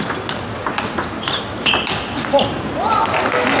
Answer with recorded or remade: recorded